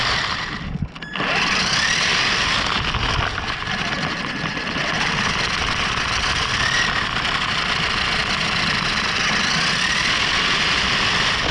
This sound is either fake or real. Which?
real